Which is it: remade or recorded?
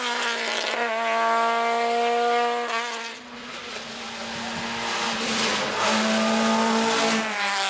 recorded